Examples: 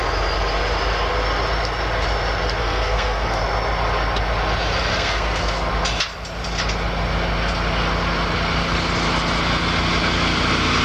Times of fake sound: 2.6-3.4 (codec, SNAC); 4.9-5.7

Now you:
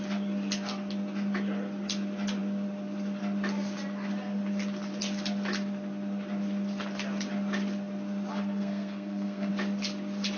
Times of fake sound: 8.3-9.5 (codec, SNAC)